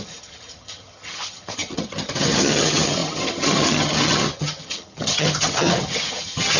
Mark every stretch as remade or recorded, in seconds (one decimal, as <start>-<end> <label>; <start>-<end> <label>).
0.0-6.6 remade